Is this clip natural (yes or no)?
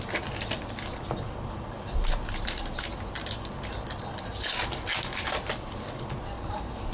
yes